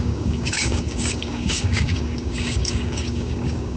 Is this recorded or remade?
remade